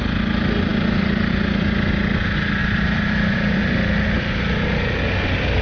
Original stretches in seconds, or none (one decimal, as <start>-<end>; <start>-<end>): 0.0-2.6; 3.6-5.6